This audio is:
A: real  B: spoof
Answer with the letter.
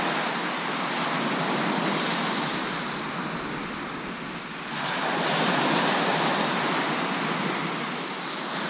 A